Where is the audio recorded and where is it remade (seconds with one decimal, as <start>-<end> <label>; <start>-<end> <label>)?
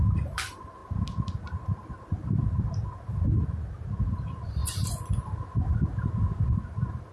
0.0-4.6 remade; 4.6-6.5 recorded; 6.5-7.1 remade